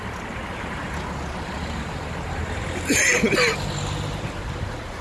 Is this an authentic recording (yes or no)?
yes